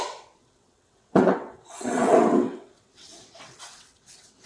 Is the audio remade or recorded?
remade